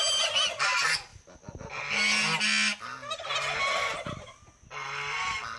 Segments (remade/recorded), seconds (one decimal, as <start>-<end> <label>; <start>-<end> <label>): 0.0-5.6 recorded